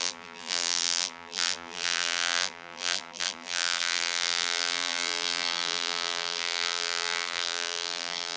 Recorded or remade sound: remade